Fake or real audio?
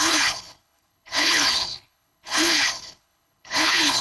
fake